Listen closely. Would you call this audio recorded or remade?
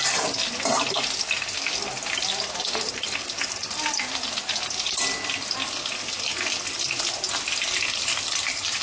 recorded